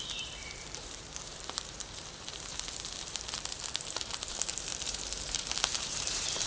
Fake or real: fake